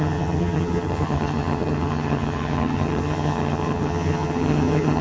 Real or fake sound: fake